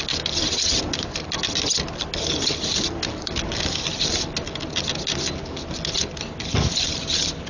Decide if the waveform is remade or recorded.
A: recorded